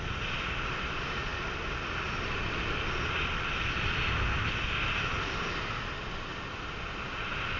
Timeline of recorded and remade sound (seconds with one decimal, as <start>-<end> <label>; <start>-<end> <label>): 0.0-7.6 recorded